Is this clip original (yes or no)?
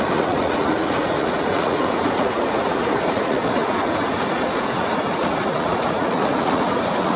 no